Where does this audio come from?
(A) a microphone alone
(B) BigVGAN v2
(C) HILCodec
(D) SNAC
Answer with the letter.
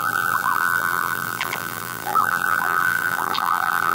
B